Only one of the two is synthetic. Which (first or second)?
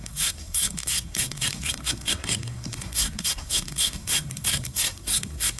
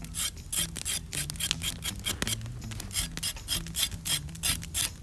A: first